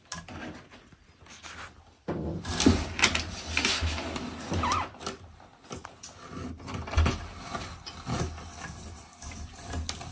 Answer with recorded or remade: recorded